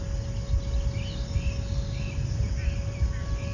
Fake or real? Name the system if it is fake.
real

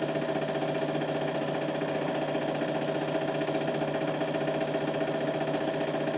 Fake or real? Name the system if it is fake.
real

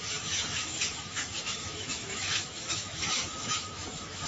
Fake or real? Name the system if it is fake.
fake, autoencoder, DAC-VAE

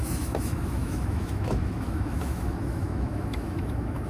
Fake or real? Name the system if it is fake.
fake, autoencoder, DAC-VAE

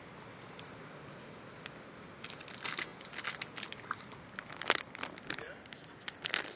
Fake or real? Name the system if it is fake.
real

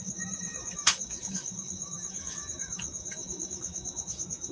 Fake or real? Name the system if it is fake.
fake, autoencoder, DAC-VAE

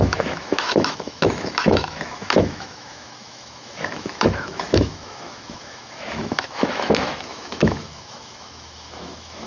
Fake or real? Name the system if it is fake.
fake, autoencoder, DAC-VAE